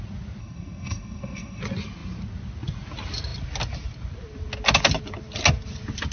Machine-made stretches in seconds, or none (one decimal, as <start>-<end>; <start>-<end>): 0.4-1.6